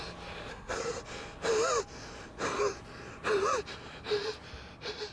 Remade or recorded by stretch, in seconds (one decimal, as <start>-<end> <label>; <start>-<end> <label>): 0.0-0.5 recorded; 0.5-1.0 remade; 1.0-5.1 recorded